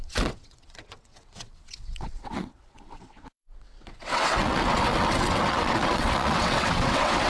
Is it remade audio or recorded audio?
remade